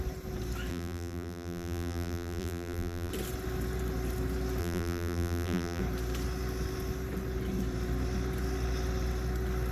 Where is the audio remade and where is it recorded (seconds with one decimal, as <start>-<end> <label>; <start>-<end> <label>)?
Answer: 0.0-0.7 recorded; 0.7-3.1 remade; 3.1-4.6 recorded; 4.6-5.8 remade; 5.8-9.7 recorded